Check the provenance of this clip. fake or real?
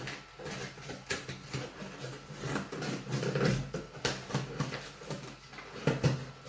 real